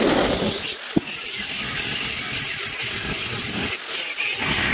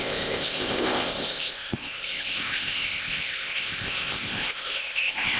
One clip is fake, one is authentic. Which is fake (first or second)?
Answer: second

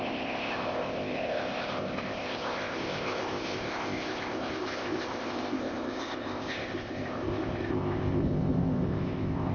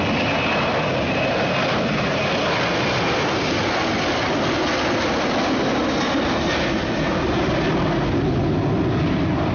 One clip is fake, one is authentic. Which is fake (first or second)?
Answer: first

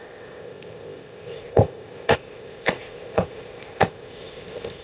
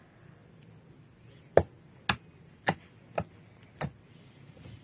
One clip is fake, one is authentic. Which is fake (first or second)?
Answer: first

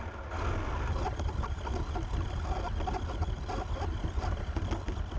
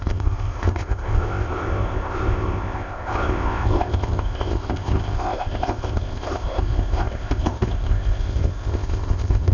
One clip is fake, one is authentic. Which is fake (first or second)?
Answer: second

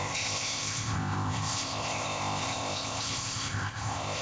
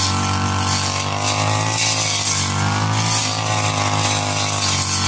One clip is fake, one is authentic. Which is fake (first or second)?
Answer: first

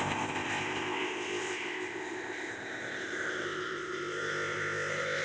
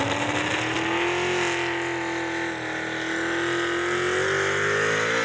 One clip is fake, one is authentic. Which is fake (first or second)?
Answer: first